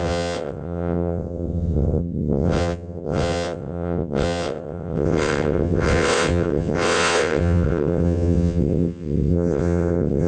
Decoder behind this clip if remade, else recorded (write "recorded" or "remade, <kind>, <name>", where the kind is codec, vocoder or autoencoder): remade, vocoder, WaveNeXt